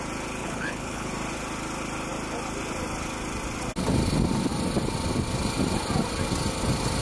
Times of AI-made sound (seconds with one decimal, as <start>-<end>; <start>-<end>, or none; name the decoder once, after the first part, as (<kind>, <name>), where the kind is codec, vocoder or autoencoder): 0.4-1.1 (codec, HILCodec)